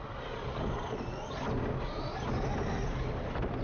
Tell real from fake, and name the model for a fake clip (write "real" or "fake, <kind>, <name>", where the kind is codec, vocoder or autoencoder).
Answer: real